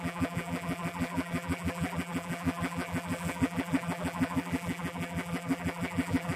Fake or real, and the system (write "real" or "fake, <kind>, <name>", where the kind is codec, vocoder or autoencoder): fake, vocoder, BigVGAN v2